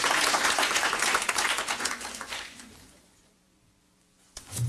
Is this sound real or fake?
fake